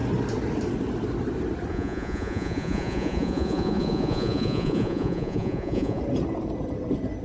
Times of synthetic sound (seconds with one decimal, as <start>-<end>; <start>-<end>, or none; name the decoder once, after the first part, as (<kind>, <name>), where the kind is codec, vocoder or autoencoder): 1.7-6.0 (vocoder, Vocos)